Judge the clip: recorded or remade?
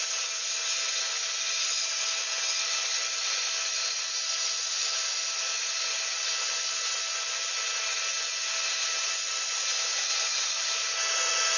recorded